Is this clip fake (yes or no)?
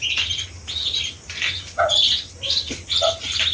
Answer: no